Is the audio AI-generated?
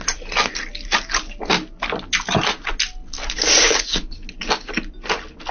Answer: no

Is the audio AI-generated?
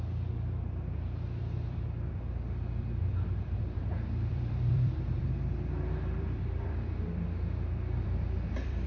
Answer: yes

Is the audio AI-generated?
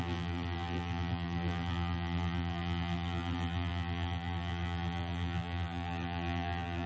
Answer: yes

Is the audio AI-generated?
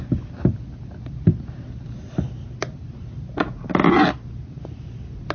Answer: no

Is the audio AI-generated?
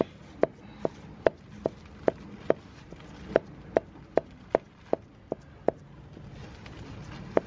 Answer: no